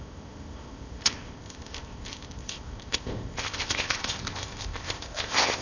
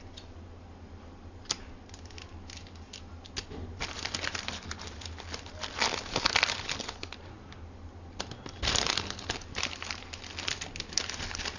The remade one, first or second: first